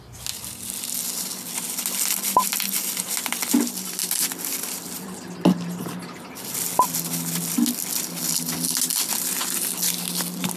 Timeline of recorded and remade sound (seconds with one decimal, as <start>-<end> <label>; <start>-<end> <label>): 0.0-10.6 recorded